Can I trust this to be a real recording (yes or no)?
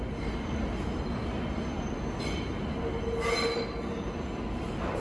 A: yes